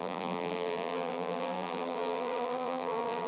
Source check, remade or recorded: remade